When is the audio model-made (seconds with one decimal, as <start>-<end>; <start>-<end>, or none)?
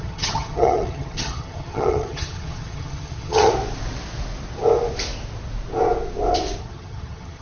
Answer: 0.0-3.5; 6.6-7.4